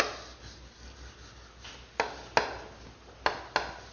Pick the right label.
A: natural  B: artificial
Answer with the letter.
A